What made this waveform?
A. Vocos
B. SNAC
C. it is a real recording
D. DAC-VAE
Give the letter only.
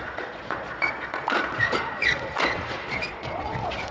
A